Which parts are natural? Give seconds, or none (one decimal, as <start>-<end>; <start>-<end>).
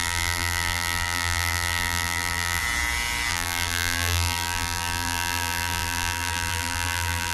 2.6-3.3